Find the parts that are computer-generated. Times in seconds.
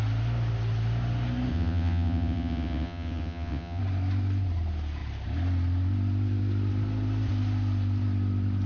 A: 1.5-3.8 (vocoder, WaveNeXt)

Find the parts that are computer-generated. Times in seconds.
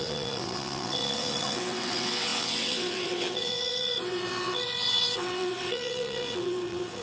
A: 0.0-7.0 (vocoder, WaveNeXt)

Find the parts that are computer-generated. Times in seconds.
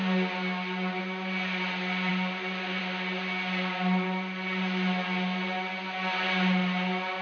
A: none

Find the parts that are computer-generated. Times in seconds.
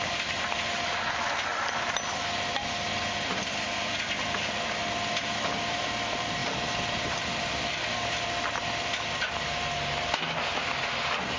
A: none